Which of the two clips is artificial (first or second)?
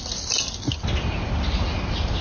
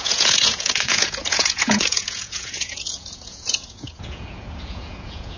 second